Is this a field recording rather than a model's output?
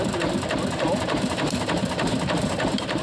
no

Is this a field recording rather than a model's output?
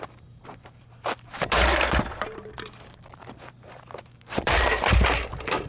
no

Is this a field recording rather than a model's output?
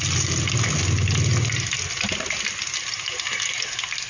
yes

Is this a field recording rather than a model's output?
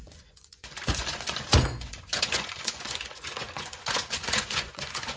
no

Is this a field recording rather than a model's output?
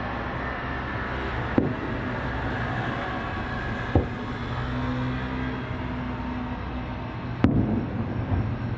yes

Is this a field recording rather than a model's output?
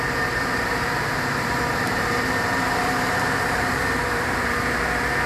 no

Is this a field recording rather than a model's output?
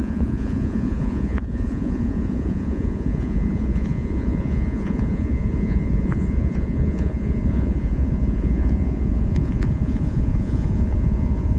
no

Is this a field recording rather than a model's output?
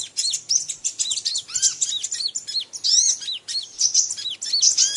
yes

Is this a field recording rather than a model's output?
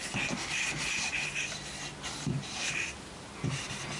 yes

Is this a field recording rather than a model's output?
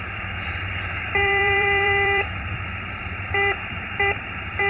no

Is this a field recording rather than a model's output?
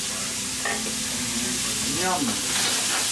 yes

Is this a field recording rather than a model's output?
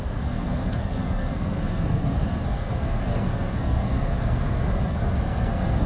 no